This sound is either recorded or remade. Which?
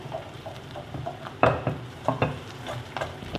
remade